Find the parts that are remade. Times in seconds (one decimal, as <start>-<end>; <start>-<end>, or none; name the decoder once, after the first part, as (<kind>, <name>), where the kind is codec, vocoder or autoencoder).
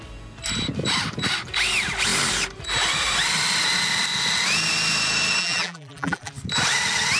5.4-6.3 (vocoder, BigVGAN v2)